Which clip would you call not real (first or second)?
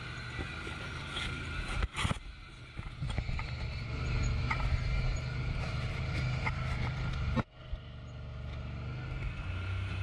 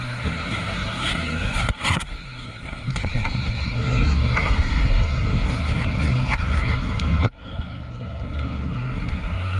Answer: second